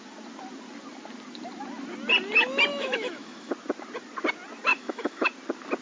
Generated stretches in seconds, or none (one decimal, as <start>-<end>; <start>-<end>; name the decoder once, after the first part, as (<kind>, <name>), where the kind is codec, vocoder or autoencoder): 2.7-3.5 (autoencoder, DAC-VAE); 4.7-5.3